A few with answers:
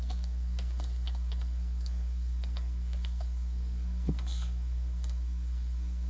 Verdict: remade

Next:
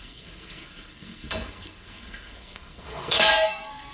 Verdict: remade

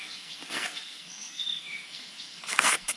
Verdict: remade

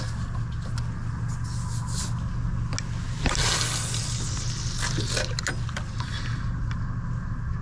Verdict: recorded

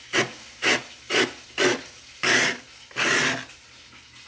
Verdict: recorded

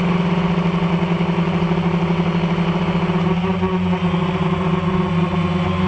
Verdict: recorded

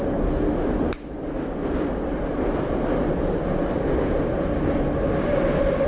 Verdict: recorded